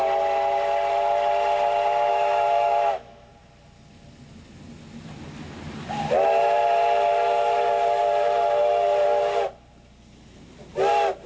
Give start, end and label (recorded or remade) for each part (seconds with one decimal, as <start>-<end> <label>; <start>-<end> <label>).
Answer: 0.0-2.1 recorded; 2.1-3.3 remade; 3.3-11.3 recorded